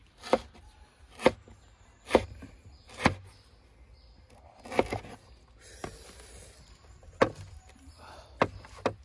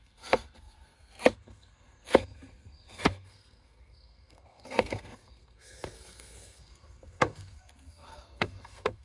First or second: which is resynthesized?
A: second